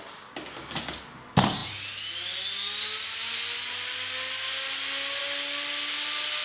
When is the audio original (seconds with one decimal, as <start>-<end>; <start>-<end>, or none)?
0.0-6.4